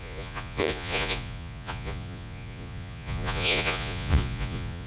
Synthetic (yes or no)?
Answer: yes